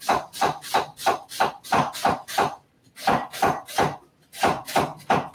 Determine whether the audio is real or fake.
fake